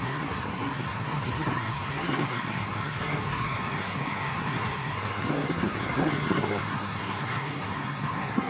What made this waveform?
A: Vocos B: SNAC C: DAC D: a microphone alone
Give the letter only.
B